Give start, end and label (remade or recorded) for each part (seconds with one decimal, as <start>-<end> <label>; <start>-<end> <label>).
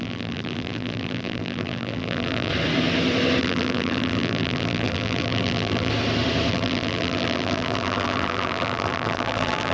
0.0-2.5 remade; 2.5-3.4 recorded; 3.4-5.9 remade; 5.9-6.5 recorded; 6.5-9.7 remade